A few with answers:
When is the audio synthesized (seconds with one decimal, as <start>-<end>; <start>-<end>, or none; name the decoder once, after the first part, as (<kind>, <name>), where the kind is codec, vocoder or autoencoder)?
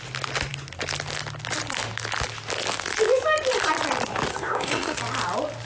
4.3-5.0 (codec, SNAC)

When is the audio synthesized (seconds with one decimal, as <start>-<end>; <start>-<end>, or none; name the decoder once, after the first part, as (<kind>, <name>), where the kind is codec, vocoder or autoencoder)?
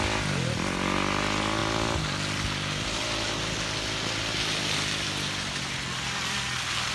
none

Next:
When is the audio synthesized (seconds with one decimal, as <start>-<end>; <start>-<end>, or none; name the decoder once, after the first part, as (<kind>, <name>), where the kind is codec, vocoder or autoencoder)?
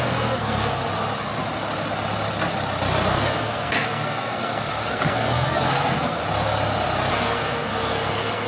0.0-0.8 (codec, SNAC); 3.1-6.2; 7.1-8.5